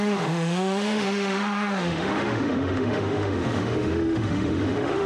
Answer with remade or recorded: remade